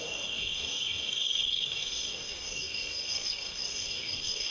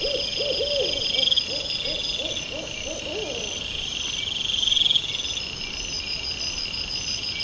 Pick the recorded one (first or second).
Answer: second